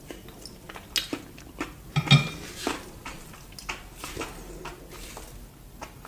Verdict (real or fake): real